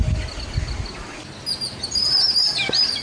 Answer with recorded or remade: recorded